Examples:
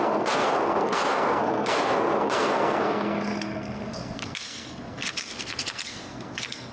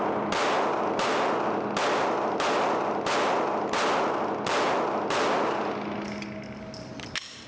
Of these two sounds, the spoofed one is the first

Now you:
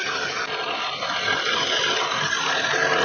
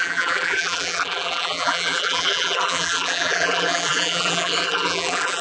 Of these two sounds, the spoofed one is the second